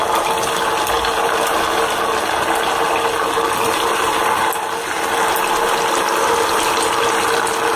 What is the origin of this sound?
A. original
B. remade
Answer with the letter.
A